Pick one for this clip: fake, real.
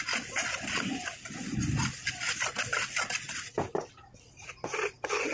real